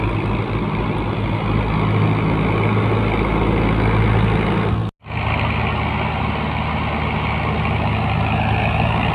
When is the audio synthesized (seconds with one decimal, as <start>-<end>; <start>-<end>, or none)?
none